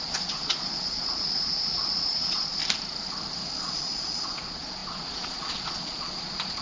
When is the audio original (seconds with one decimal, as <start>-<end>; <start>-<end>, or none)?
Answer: 2.6-3.6